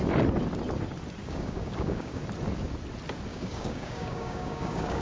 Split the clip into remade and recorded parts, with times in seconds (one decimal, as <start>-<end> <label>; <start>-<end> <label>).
0.0-1.2 recorded; 1.2-2.2 remade; 2.2-3.3 recorded; 3.3-5.0 remade